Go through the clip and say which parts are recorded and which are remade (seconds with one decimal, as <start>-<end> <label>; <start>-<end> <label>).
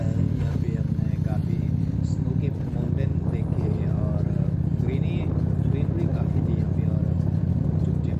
0.0-1.4 recorded; 1.4-2.4 remade; 2.4-8.2 recorded